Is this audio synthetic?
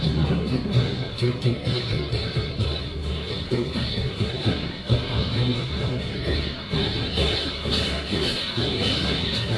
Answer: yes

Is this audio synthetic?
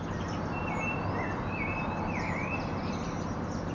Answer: no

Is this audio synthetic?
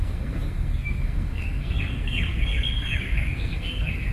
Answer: yes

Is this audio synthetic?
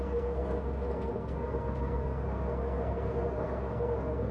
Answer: yes